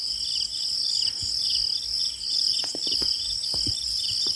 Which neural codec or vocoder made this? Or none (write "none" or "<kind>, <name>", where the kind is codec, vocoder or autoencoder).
none